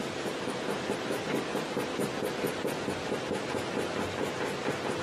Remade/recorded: recorded